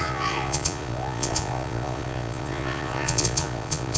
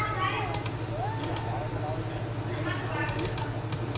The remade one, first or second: first